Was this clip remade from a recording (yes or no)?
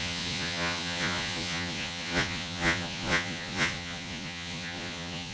yes